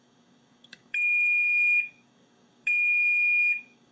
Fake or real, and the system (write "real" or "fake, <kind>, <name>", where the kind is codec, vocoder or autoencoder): fake, codec, DAC